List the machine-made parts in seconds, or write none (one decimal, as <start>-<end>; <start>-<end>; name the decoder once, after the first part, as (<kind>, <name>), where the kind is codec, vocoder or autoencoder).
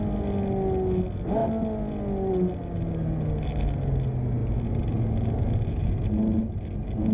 none